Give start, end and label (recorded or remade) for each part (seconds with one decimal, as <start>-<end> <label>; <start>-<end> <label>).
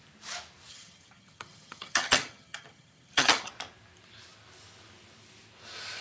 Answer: 0.0-0.7 recorded; 0.7-3.5 remade; 3.5-6.0 recorded